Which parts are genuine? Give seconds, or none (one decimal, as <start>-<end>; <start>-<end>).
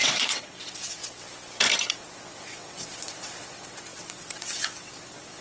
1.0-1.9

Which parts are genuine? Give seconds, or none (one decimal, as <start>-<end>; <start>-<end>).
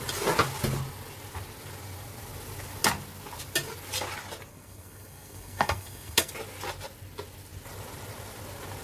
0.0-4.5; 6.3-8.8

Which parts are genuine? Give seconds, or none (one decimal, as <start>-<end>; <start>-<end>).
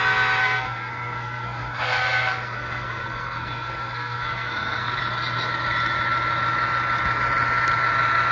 0.0-0.4; 5.0-8.3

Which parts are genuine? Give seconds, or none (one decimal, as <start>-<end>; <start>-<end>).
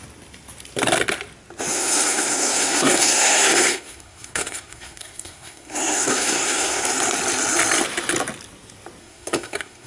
0.0-1.7; 6.8-9.0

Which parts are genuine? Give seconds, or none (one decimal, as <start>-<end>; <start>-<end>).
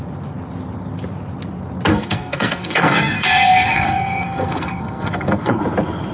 0.0-1.9; 5.6-6.1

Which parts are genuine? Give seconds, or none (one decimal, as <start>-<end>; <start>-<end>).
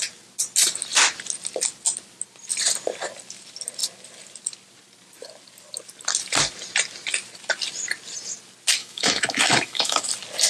0.0-8.8; 10.1-10.5